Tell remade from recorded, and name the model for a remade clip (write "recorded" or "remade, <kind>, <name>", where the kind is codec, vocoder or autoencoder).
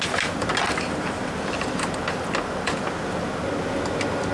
recorded